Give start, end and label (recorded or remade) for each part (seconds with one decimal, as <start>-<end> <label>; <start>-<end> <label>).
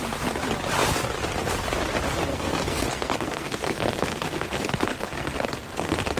0.0-2.3 recorded; 2.3-6.2 remade